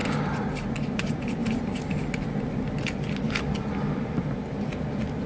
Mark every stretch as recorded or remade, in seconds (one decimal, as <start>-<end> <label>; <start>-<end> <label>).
0.0-5.3 recorded

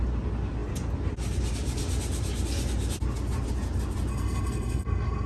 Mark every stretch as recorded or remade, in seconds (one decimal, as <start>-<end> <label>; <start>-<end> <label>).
0.0-4.1 recorded; 4.1-5.3 remade

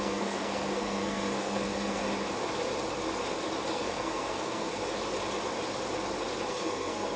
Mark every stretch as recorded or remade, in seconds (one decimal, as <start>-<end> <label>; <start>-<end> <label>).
0.0-2.0 remade; 2.0-3.7 recorded; 3.7-4.8 remade; 4.8-6.5 recorded; 6.5-7.2 remade

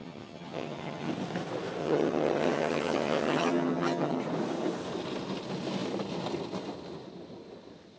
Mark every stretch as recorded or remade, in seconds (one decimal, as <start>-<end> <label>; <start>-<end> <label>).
0.0-1.1 remade; 1.1-1.8 recorded; 1.8-4.2 remade; 4.2-8.0 recorded

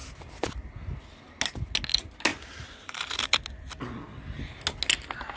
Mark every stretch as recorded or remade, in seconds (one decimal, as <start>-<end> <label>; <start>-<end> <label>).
0.0-2.3 recorded; 2.3-3.2 remade; 3.2-5.4 recorded